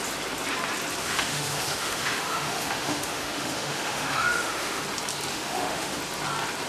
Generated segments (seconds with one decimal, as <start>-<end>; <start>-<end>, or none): 1.0-4.8; 5.3-6.0